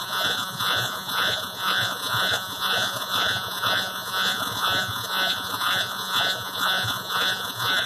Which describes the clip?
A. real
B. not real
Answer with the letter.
B